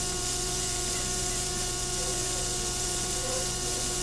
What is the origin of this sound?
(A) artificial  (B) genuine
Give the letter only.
A